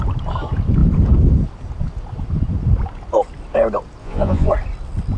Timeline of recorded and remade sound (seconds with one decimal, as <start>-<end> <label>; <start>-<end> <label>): 0.0-4.0 recorded; 4.0-4.5 remade; 4.5-5.2 recorded